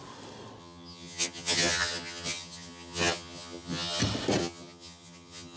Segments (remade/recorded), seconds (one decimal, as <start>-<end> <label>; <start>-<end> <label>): 0.0-0.6 recorded; 0.6-4.0 remade; 4.0-4.4 recorded; 4.4-5.6 remade